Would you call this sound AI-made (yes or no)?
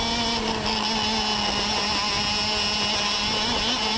no